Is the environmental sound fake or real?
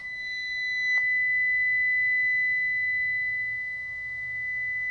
fake